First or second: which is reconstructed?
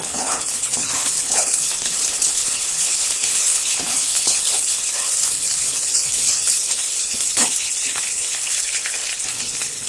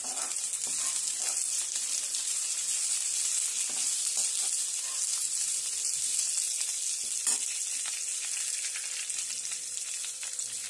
first